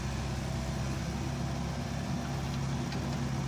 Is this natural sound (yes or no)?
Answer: yes